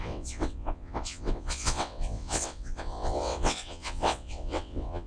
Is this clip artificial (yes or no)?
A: yes